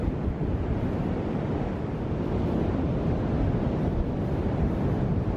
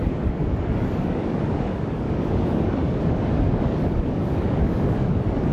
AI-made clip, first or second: second